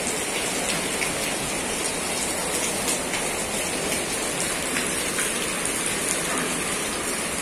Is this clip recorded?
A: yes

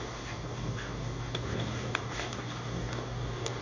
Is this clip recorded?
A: no